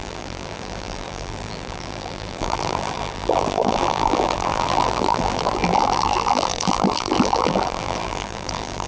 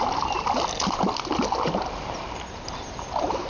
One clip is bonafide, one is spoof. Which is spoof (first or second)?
first